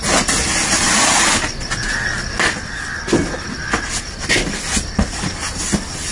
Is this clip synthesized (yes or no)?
no